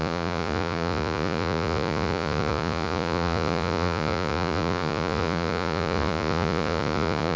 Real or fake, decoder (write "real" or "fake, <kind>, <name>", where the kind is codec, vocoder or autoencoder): fake, vocoder, Vocos